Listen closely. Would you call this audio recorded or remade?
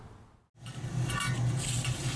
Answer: recorded